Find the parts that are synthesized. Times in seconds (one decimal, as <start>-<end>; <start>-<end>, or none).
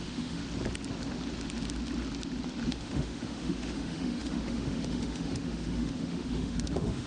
0.0-0.4; 2.7-7.1